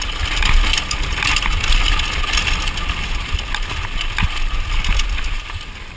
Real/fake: real